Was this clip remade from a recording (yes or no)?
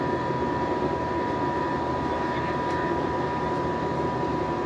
yes